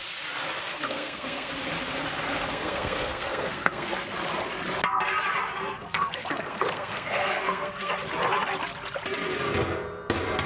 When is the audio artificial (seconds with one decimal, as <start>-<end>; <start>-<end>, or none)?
0.7-1.5; 2.5-3.9; 5.7-7.9